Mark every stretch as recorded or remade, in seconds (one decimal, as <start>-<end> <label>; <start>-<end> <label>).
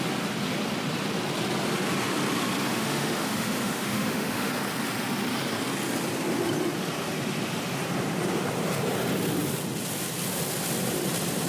0.0-2.7 recorded; 2.7-4.5 remade; 4.5-11.5 recorded